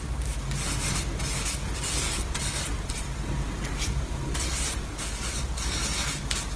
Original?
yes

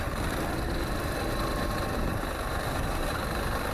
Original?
yes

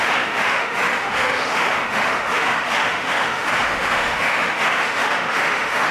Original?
no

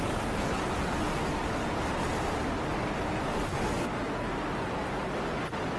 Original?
yes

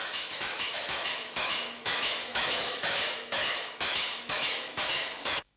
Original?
no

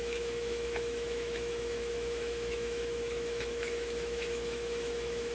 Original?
no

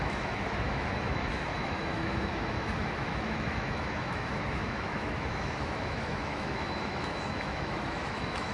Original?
no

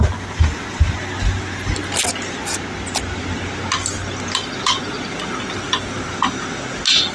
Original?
yes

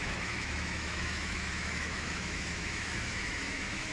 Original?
no